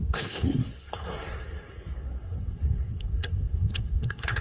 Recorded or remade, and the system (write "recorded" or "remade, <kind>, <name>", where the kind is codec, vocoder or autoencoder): remade, codec, SNAC